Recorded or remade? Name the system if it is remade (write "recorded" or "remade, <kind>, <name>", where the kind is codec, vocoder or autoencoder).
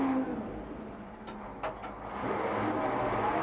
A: recorded